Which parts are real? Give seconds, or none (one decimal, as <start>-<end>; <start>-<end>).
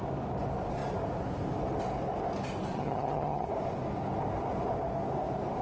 0.0-2.7; 3.5-5.6